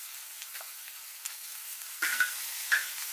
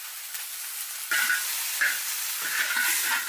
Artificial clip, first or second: first